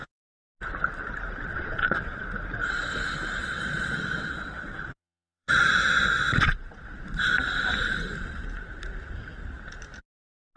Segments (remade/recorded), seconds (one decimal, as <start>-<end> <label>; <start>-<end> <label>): 0.0-1.5 recorded; 1.5-2.2 remade; 2.2-3.4 recorded; 3.4-7.2 remade; 7.2-10.6 recorded